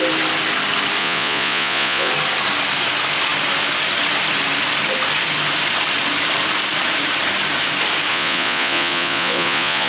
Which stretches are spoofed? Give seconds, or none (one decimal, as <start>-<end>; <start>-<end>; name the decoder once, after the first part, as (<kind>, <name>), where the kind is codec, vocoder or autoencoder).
1.0-2.1 (vocoder, Vocos); 8.1-9.9

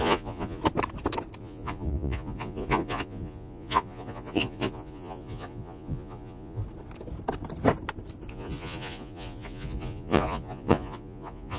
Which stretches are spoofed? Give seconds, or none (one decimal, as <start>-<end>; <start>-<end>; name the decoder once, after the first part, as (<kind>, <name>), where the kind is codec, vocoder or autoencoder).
0.0-0.6 (vocoder, Vocos); 1.4-6.6; 8.3-11.6

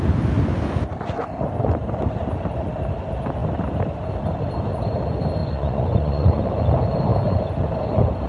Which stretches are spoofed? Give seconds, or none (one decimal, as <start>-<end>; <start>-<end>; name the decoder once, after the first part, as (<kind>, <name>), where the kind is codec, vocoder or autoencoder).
5.4-6.4 (vocoder, Vocos)

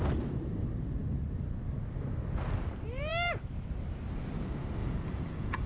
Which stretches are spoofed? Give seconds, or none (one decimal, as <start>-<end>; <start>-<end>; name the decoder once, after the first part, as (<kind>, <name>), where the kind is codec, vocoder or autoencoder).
4.8-5.7 (vocoder, Vocos)

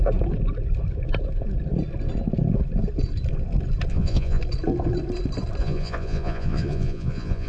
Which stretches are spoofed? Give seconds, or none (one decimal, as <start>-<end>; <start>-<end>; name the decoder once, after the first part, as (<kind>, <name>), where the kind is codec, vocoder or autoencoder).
3.9-4.4 (vocoder, Vocos); 5.6-7.5

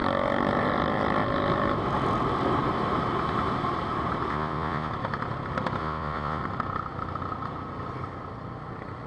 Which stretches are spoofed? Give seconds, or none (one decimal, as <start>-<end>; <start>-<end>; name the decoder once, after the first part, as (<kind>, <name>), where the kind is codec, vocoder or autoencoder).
4.3-4.9 (vocoder, Vocos); 5.8-6.4